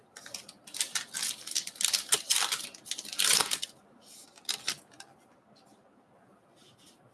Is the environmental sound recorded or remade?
recorded